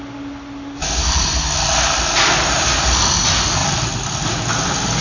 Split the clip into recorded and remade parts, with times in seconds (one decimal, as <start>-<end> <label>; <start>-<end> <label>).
0.0-5.0 recorded